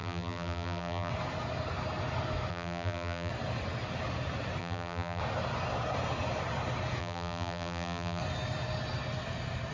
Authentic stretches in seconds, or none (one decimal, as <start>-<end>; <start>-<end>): 1.1-2.5; 3.3-4.6; 5.2-7.0; 8.2-9.7